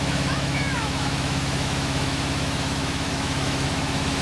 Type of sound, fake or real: fake